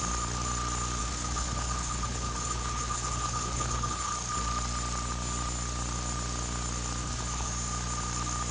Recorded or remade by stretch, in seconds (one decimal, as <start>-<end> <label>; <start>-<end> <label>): 0.0-1.0 recorded; 1.0-4.1 remade; 4.1-7.0 recorded; 7.0-7.5 remade; 7.5-8.5 recorded